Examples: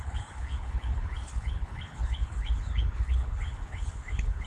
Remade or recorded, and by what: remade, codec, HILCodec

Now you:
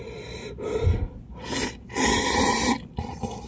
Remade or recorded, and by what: recorded